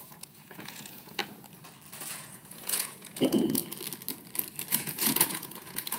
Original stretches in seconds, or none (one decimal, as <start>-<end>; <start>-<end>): 1.2-2.0; 3.6-4.7